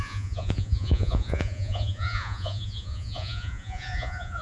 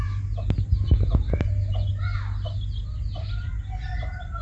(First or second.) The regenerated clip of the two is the first